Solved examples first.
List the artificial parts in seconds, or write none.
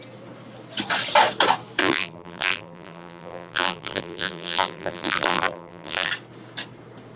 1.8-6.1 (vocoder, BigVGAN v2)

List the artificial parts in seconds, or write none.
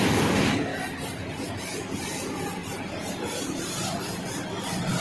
none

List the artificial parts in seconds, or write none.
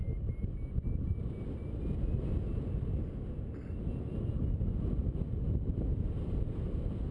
none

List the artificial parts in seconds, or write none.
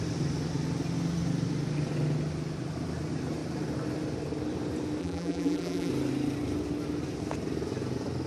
5.0-5.9 (vocoder, BigVGAN v2)